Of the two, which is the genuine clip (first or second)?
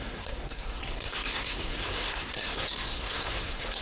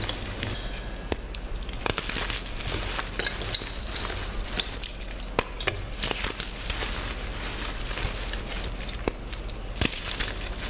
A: second